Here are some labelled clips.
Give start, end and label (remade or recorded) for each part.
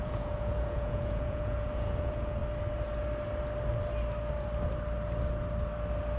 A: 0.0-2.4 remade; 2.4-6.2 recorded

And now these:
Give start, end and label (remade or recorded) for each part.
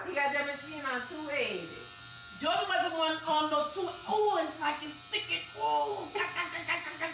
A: 0.0-7.1 remade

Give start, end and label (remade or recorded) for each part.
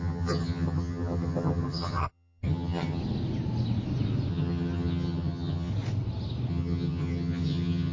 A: 0.0-3.0 remade; 3.0-4.3 recorded; 4.3-5.7 remade; 5.7-6.5 recorded; 6.5-7.9 remade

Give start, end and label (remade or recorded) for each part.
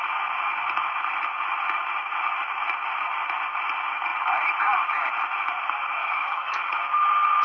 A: 0.0-6.0 recorded; 6.0-6.8 remade; 6.8-7.4 recorded